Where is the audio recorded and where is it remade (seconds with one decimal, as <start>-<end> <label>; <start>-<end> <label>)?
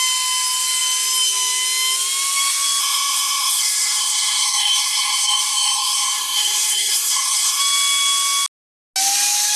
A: 0.0-2.8 recorded; 2.8-7.6 remade; 7.6-9.6 recorded